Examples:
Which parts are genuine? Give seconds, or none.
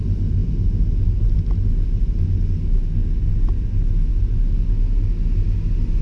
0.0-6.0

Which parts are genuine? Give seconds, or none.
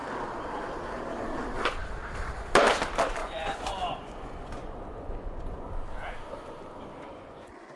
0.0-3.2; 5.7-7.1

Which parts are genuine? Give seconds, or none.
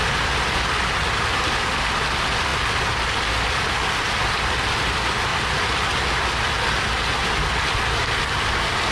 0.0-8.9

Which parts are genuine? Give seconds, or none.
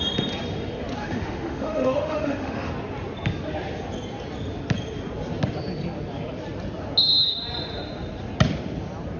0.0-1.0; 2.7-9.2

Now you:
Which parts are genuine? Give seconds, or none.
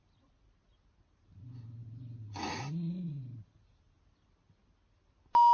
0.0-5.5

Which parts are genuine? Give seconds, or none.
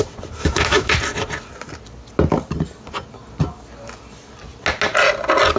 0.0-0.4; 0.9-5.6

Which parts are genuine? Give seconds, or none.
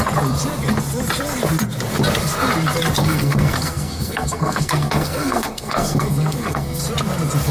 0.0-3.0; 6.8-7.5